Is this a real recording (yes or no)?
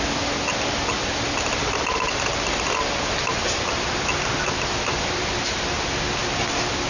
yes